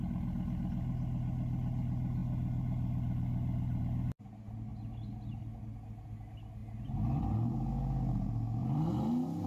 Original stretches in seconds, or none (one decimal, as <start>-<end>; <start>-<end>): 0.0-2.2; 3.8-8.6; 9.1-9.5